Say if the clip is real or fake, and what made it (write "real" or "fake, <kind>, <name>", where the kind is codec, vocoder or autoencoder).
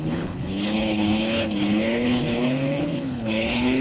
fake, codec, HILCodec